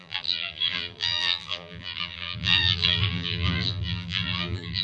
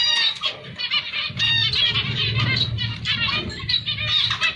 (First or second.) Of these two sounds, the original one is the second